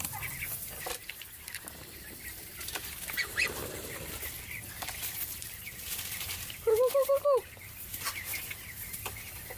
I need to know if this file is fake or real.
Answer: real